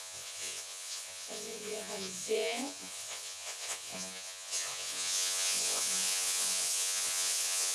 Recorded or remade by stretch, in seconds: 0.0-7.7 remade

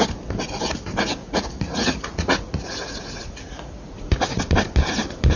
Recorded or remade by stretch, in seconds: 0.0-1.2 recorded; 1.2-4.4 remade; 4.4-5.4 recorded